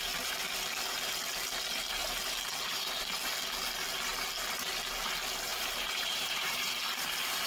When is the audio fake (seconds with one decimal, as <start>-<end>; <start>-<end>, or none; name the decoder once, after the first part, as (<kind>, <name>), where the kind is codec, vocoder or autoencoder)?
5.5-6.7 (vocoder, BigVGAN v2)